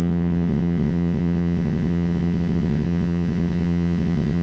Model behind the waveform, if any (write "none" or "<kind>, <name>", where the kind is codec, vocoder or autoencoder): vocoder, WaveNeXt